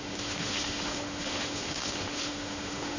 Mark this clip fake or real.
fake